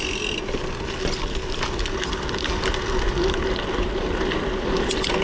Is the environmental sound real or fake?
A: real